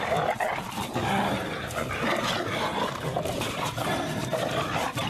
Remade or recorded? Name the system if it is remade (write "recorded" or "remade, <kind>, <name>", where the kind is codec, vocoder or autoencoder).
recorded